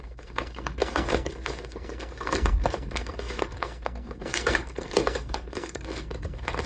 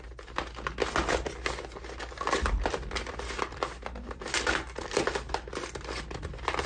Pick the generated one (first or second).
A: first